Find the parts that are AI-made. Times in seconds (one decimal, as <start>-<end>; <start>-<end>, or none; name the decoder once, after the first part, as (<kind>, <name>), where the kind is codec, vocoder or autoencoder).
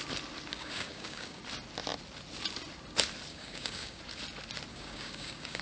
0.5-1.4 (codec, DAC); 3.3-4.0; 4.7-5.6